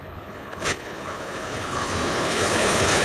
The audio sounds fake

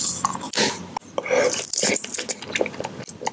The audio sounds real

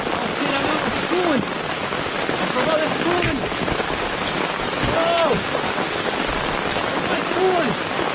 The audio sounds real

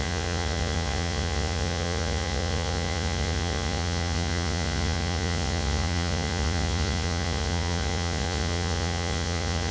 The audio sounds fake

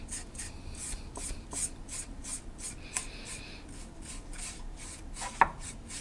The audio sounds real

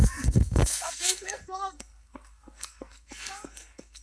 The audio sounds fake